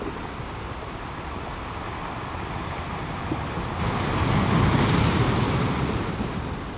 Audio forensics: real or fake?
real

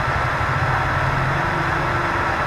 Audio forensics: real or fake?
real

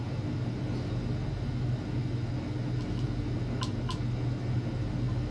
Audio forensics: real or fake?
real